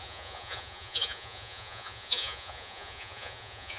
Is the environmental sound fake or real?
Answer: fake